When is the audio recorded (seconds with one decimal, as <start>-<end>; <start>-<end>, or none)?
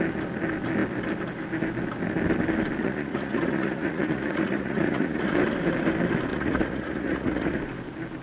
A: 0.0-2.8; 5.5-6.3; 7.6-8.2